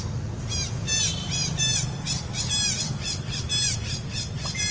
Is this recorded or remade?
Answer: recorded